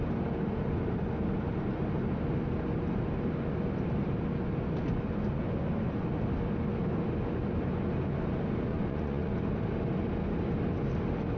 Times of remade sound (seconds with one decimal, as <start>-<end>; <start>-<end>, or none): 8.7-9.3